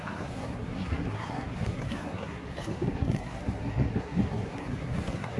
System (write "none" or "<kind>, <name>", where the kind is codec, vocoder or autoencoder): codec, SNAC